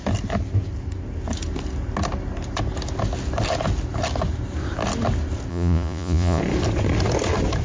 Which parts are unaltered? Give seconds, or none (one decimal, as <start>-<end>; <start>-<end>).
0.0-5.5; 6.4-7.6